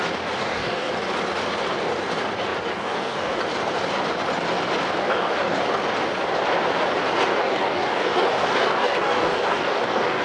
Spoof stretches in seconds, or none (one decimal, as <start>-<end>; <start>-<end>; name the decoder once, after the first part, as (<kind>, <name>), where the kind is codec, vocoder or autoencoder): 0.4-0.9 (codec, DAC); 2.7-3.4; 5.1-5.6; 7.4-10.2